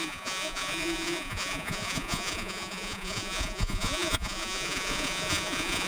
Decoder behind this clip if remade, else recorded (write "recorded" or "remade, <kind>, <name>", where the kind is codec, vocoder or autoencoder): remade, vocoder, Vocos